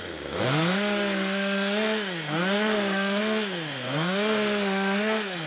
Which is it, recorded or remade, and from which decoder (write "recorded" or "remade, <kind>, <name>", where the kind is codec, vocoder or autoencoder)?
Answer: remade, codec, SNAC